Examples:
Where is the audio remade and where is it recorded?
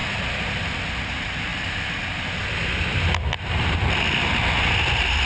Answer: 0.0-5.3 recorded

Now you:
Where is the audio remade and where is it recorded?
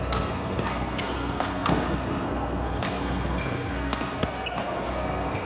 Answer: 0.0-5.5 remade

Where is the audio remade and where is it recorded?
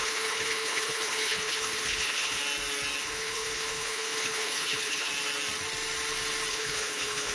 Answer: 0.0-2.4 remade; 2.4-3.0 recorded; 3.0-5.1 remade; 5.1-6.5 recorded; 6.5-7.3 remade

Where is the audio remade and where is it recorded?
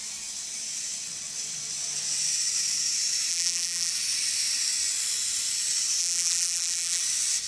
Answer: 0.0-3.3 recorded; 3.3-3.9 remade; 3.9-6.0 recorded; 6.0-7.0 remade; 7.0-7.5 recorded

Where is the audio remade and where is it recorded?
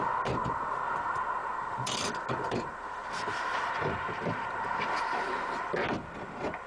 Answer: 0.0-1.4 recorded; 1.4-5.0 remade; 5.0-6.7 recorded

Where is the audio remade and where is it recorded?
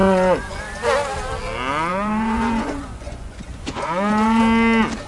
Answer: 0.0-0.6 remade; 0.6-1.9 recorded; 1.9-4.4 remade; 4.4-5.1 recorded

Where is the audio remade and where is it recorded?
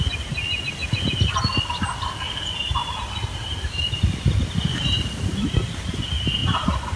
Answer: 0.0-7.0 recorded